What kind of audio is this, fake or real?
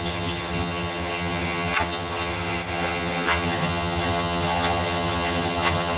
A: fake